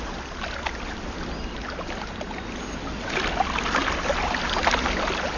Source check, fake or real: real